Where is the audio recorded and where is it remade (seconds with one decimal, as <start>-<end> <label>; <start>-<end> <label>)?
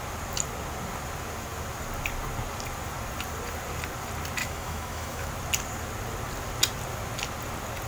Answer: 0.0-4.4 recorded; 4.4-5.3 remade; 5.3-7.9 recorded